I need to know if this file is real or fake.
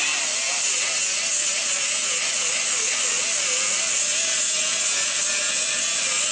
real